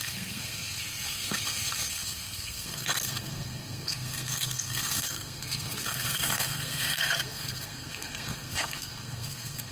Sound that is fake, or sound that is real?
fake